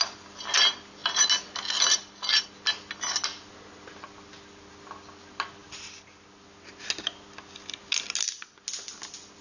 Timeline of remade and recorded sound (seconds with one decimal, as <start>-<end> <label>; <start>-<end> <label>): 0.0-9.4 recorded